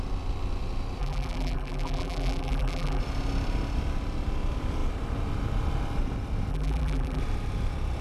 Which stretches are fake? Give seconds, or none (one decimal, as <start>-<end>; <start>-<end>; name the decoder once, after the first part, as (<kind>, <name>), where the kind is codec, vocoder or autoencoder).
1.0-3.0 (vocoder, BigVGAN v2); 6.5-7.2